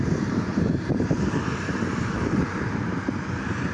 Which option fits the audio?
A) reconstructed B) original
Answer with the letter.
A